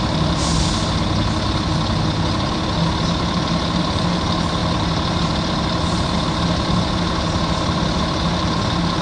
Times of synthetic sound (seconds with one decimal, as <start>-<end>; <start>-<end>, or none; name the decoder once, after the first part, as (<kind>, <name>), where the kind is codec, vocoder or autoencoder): 0.0-0.5 (vocoder, BigVGAN v2); 3.0-9.0